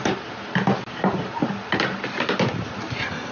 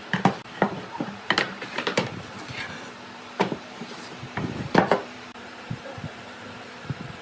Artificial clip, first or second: second